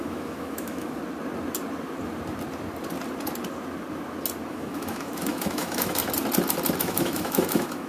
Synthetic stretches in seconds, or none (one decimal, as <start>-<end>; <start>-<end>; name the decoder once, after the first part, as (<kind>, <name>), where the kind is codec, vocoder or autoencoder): 0.0-1.0 (autoencoder, DAC-VAE); 4.5-6.0; 6.8-7.9